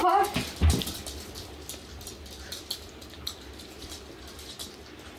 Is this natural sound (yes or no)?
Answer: yes